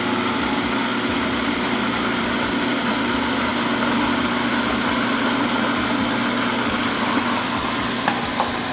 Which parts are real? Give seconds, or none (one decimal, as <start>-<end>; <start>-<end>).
0.0-0.9; 2.5-8.7